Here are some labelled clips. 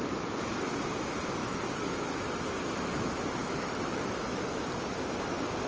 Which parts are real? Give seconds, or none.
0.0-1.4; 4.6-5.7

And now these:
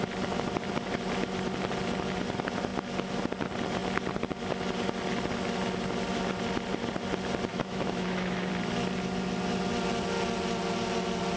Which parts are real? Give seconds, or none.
0.0-7.5; 8.5-11.4